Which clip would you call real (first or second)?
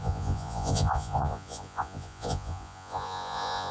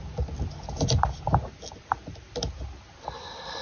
second